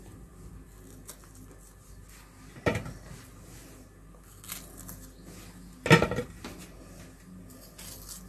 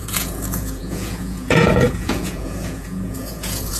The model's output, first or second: second